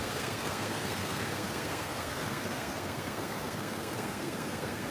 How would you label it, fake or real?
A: fake